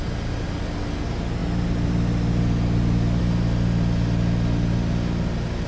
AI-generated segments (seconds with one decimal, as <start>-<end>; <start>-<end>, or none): none